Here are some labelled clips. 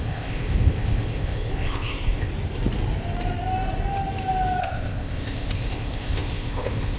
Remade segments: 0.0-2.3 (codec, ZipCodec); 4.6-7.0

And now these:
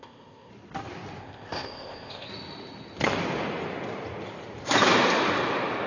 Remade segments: 0.0-0.5 (codec, ZipCodec); 1.2-2.3

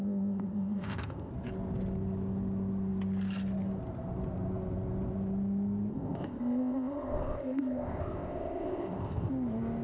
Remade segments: 0.0-1.3 (codec, ZipCodec); 5.9-9.3

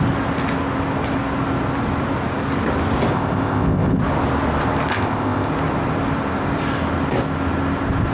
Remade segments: 3.1-4.0 (codec, ZipCodec); 4.9-5.5